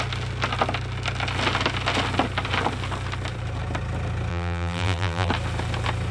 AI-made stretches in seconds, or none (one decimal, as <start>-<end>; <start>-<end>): 4.3-5.3